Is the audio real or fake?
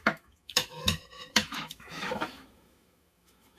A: fake